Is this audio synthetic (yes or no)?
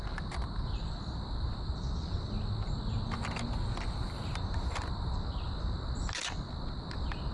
no